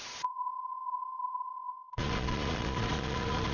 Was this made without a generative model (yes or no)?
no